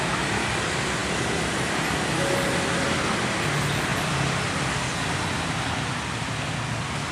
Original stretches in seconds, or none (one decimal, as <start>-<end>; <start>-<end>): 0.0-7.1